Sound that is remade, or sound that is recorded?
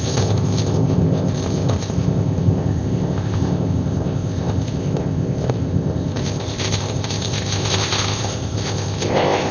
remade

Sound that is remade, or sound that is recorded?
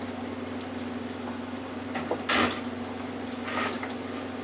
recorded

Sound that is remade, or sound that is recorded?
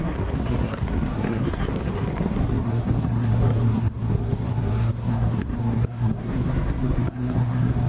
remade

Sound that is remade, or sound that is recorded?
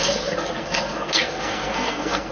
remade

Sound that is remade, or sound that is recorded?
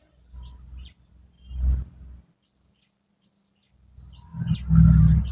recorded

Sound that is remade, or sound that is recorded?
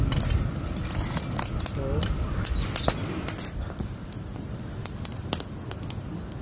recorded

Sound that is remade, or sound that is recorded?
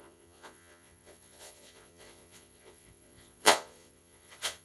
remade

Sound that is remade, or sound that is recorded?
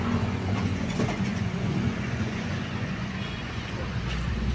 remade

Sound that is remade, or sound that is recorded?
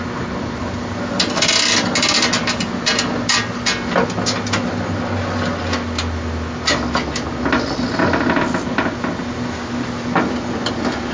recorded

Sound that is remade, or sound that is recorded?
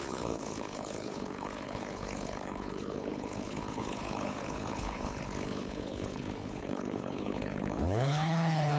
remade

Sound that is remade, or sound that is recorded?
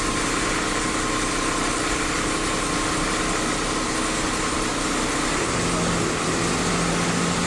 recorded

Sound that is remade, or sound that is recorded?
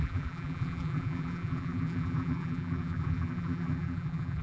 remade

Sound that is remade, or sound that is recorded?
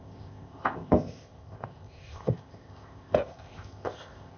remade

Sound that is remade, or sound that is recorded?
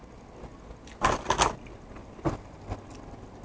recorded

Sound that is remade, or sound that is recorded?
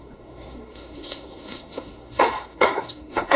remade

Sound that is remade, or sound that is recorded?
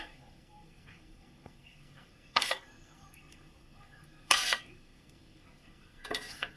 remade